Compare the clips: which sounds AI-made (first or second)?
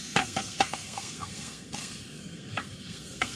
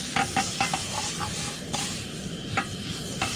first